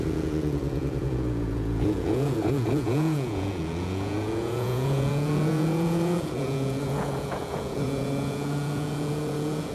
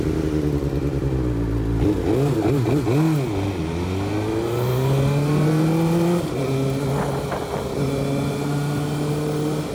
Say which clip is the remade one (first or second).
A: first